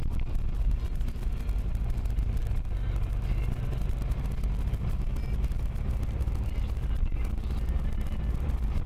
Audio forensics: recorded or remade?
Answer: recorded